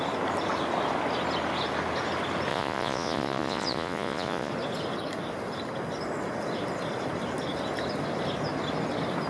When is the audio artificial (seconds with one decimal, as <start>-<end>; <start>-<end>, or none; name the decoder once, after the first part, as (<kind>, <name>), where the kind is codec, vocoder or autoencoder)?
2.5-4.5 (vocoder, Vocos)